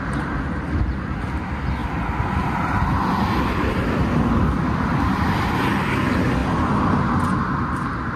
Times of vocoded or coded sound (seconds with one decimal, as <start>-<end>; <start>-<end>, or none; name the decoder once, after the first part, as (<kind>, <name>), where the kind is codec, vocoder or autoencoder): none